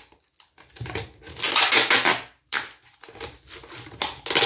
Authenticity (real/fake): real